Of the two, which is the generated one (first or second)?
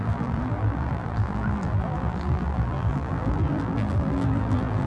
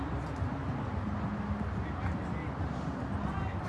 first